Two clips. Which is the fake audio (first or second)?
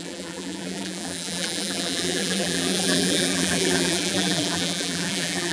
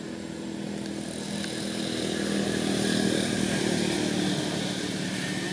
first